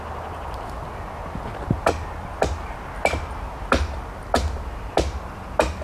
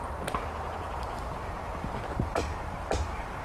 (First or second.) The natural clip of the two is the first